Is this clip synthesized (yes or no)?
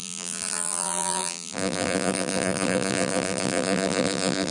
yes